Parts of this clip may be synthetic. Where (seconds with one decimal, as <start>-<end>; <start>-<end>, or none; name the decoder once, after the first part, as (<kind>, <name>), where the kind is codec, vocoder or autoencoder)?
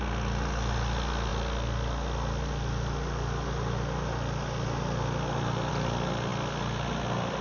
none